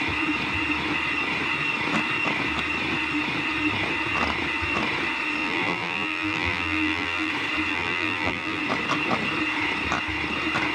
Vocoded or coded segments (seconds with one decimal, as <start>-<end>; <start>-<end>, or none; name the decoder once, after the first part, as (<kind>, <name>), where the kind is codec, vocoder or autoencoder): 5.4-7.3 (vocoder, BigVGAN v2); 7.7-8.6